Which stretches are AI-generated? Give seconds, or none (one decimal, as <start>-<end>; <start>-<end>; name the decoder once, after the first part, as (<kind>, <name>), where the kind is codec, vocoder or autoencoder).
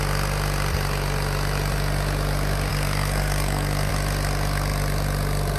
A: 2.7-3.9 (codec, SNAC)